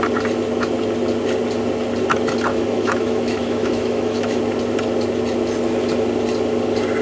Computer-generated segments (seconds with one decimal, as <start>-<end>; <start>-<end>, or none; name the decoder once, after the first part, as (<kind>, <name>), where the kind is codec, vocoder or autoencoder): 2.5-4.4 (autoencoder, DAC-VAE)